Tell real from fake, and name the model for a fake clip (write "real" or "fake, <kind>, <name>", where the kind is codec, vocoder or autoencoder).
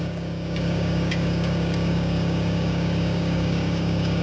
fake, codec, DAC